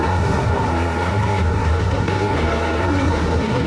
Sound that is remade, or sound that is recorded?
remade